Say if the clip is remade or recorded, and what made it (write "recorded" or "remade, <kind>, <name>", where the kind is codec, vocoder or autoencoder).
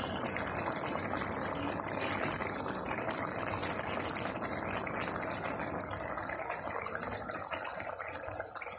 recorded